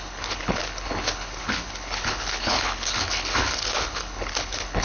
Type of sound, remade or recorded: remade